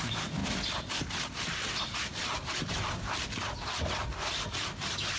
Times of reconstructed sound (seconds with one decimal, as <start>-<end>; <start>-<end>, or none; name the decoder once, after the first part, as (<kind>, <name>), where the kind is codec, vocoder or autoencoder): 0.0-0.4 (vocoder, BigVGAN v2); 1.8-5.2